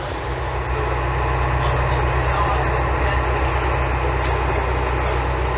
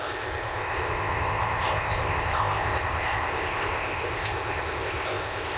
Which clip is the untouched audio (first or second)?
first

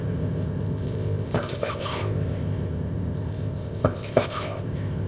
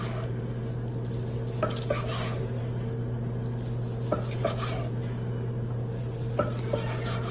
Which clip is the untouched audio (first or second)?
second